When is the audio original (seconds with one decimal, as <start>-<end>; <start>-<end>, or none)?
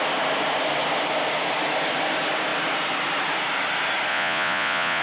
0.0-4.1